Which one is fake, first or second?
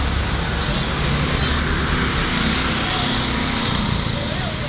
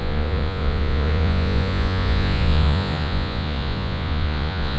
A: second